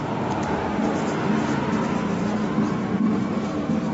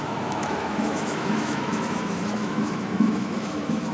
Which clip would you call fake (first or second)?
second